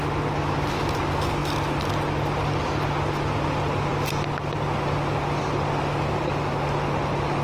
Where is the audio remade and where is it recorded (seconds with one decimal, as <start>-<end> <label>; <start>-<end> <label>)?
0.0-7.4 recorded